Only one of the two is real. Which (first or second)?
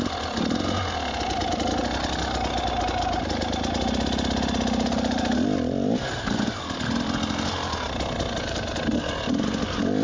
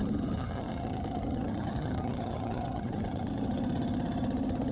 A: first